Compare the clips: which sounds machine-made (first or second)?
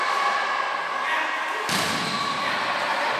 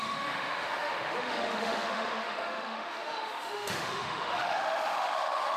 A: second